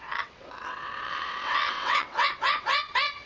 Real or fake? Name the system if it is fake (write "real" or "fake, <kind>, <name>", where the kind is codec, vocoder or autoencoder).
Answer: fake, vocoder, WaveNeXt